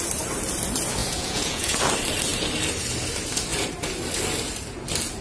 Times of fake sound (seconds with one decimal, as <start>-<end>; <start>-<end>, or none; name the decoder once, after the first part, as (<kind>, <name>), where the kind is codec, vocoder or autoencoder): 1.0-1.8 (vocoder, Vocos)